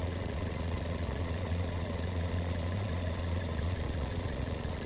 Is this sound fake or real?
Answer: fake